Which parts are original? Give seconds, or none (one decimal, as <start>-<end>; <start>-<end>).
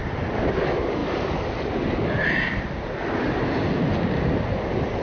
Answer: 0.0-5.0